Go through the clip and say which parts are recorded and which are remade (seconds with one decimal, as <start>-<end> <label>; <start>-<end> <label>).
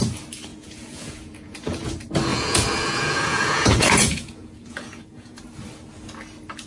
0.0-0.5 recorded; 0.5-1.9 remade; 1.9-2.3 recorded; 2.3-5.4 remade; 5.4-6.7 recorded